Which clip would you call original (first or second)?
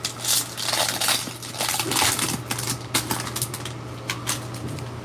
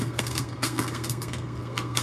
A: first